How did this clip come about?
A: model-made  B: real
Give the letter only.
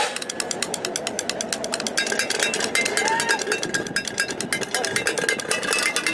B